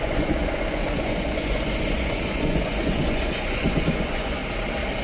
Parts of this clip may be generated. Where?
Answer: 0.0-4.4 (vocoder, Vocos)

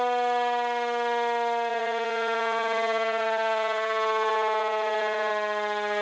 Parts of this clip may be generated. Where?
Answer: 1.7-5.3 (vocoder, Vocos)

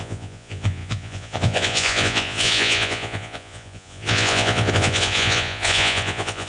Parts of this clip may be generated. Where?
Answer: 0.0-6.5 (vocoder, Vocos)

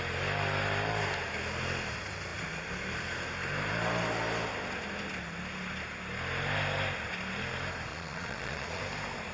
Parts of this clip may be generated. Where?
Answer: 7.9-8.8 (vocoder, Vocos)